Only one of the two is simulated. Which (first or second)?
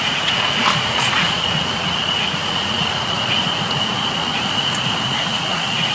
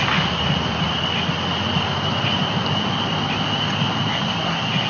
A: first